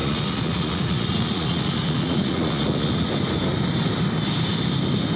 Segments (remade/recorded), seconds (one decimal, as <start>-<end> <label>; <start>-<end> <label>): 0.0-3.1 remade; 3.1-5.2 recorded

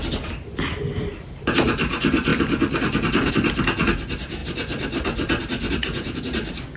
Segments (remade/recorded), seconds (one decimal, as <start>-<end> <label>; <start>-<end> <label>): 0.0-6.8 recorded

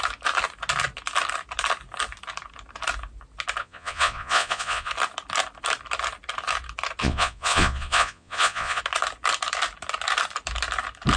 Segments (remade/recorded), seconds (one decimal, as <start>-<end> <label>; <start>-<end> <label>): 0.0-3.6 recorded; 3.6-4.9 remade; 4.9-7.0 recorded; 7.0-8.8 remade; 8.8-11.2 recorded

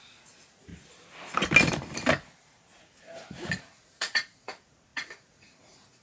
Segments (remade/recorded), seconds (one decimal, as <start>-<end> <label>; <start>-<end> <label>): 0.0-0.7 remade; 0.7-3.6 recorded; 3.6-6.0 remade

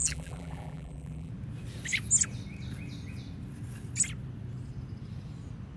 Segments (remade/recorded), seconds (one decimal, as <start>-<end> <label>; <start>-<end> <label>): 0.0-1.3 remade; 1.3-5.8 recorded

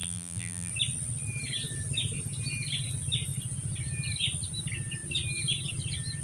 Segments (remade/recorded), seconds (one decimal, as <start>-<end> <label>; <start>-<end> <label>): 0.0-0.7 remade; 0.7-6.2 recorded

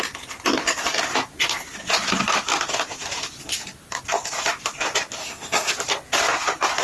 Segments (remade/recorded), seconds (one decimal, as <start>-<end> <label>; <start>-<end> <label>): 0.0-5.2 recorded; 5.2-5.7 remade; 5.7-6.8 recorded